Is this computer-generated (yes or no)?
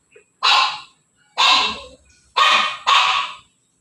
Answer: no